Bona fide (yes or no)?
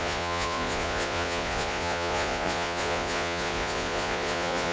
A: no